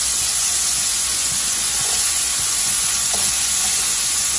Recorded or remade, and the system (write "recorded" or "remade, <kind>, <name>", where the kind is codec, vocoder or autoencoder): remade, vocoder, Vocos